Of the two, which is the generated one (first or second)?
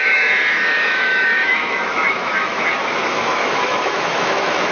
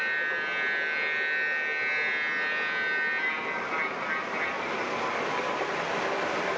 first